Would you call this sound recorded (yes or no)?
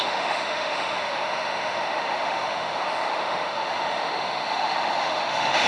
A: no